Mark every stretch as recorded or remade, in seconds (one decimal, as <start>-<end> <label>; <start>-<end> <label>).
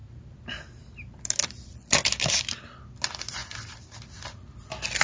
0.0-5.0 recorded